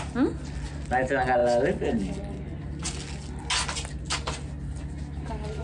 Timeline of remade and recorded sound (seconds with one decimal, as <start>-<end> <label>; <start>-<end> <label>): 0.0-5.6 recorded